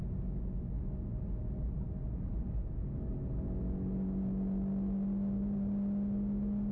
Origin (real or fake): real